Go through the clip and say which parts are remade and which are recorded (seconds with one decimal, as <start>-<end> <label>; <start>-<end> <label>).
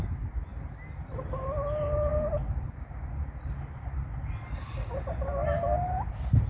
0.0-6.5 recorded